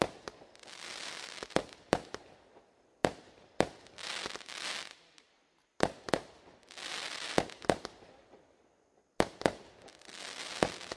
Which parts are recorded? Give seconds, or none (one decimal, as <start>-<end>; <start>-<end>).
0.0-11.0